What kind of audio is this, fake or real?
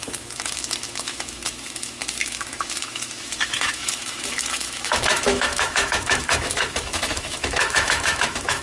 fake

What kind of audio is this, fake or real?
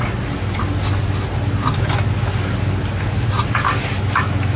real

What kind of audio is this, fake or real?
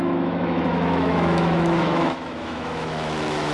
fake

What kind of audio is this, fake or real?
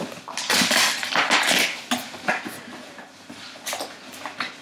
real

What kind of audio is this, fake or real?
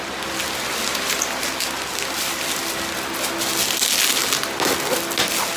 real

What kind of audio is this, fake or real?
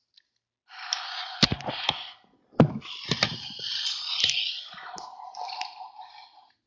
real